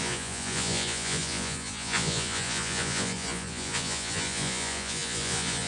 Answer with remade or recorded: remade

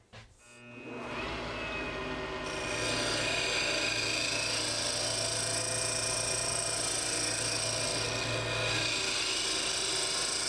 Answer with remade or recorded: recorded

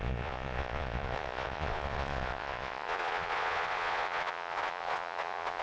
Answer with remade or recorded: remade